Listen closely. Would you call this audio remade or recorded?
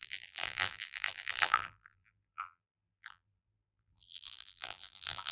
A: remade